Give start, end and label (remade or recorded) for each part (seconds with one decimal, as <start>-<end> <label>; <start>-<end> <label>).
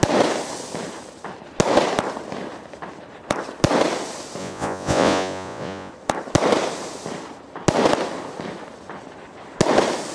0.0-4.4 recorded; 4.4-5.9 remade; 5.9-10.1 recorded